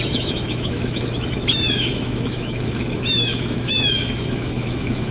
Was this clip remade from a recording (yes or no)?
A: yes